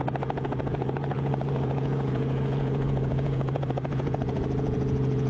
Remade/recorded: remade